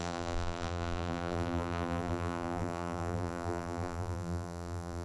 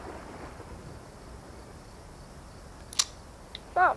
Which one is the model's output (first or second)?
first